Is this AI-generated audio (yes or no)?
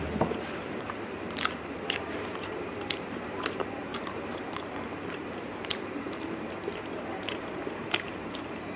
yes